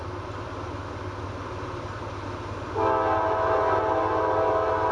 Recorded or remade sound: recorded